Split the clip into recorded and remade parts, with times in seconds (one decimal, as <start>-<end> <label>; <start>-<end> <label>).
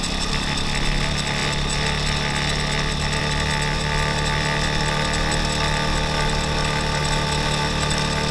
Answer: 0.0-8.3 recorded